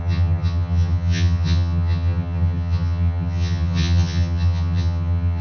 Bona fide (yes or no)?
no